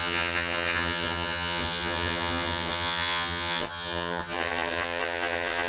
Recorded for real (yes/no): no